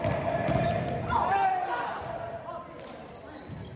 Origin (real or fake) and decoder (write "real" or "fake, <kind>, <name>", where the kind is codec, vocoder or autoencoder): real